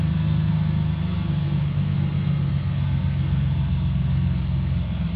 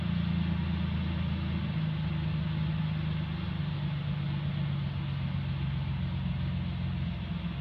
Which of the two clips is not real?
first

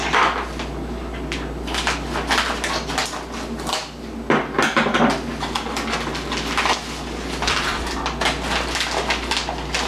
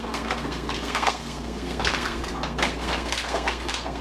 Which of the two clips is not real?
second